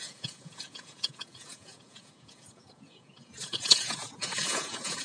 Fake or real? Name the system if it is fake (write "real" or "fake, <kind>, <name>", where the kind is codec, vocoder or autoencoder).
fake, vocoder, Vocos